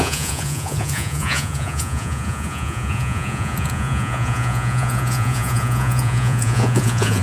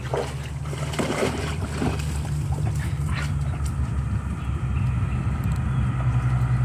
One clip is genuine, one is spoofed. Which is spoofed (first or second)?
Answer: first